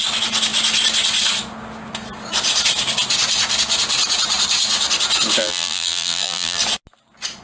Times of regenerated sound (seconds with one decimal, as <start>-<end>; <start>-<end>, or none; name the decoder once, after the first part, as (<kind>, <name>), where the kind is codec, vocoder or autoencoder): 5.4-6.6 (vocoder, BigVGAN v2)